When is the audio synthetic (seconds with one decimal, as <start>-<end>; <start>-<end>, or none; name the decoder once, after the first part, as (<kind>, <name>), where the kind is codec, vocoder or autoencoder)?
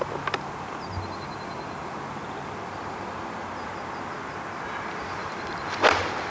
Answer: none